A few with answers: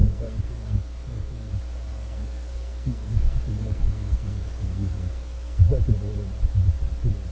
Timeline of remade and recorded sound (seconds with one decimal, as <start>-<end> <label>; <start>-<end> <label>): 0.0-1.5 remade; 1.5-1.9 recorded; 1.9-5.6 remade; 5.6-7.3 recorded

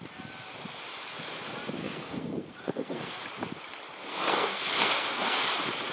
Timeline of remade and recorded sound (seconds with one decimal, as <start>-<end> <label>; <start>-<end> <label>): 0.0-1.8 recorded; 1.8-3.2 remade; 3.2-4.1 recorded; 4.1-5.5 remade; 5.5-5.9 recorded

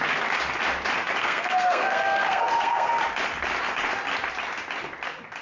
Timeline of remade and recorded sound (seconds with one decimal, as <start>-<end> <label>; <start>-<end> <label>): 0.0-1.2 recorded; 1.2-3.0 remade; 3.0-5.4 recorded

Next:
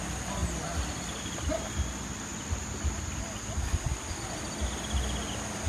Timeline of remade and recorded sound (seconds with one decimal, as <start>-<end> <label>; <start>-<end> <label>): 0.0-5.7 recorded